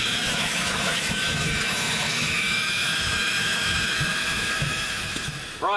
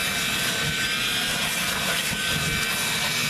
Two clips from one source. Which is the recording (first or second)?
second